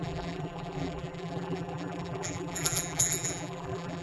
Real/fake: fake